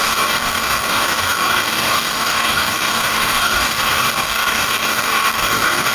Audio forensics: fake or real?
fake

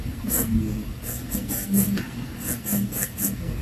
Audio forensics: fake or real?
fake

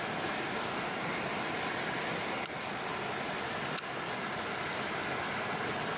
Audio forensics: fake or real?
real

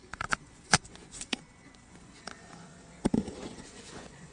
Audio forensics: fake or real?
fake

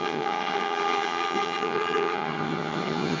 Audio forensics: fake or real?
fake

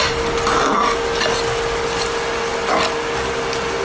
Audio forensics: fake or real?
real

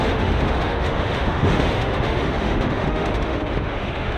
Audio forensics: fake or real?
fake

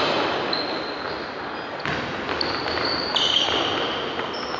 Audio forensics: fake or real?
real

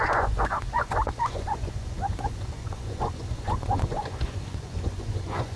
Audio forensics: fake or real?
fake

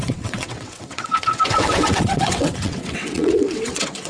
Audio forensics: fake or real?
fake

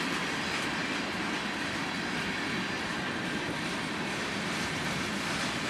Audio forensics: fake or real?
real